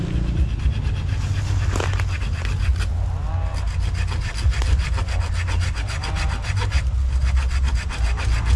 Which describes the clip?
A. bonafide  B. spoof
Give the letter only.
A